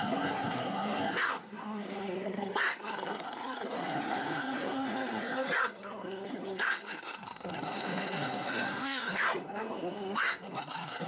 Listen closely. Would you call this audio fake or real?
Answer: fake